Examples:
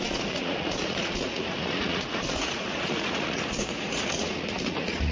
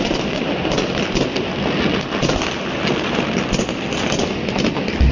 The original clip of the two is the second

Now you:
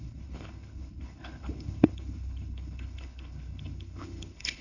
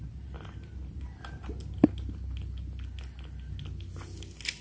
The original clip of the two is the second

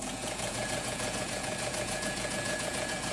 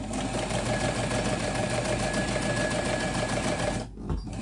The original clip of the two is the second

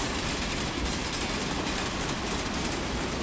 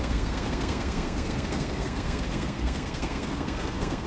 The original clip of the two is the first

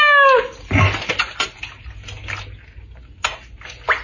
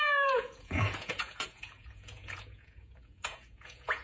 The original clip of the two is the first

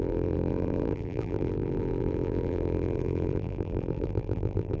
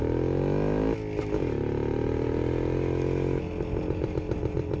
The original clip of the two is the second